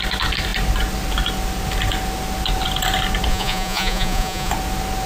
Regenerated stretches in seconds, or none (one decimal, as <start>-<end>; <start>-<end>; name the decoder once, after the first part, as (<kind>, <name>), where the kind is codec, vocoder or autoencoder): 3.3-4.5 (vocoder, Vocos)